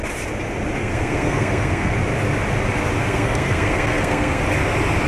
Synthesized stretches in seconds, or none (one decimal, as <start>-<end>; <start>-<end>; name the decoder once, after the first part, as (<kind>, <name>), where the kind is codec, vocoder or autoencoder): 0.8-1.9 (codec, SNAC); 3.0-4.4